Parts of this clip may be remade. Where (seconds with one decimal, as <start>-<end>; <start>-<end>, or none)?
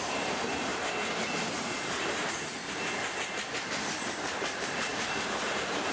0.0-2.5; 4.1-5.9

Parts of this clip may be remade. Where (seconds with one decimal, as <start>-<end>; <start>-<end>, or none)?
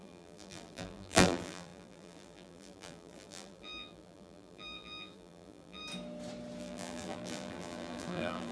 0.0-5.8; 6.6-8.5